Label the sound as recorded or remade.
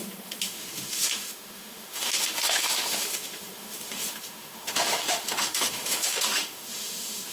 remade